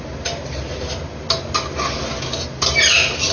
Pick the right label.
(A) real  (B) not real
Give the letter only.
A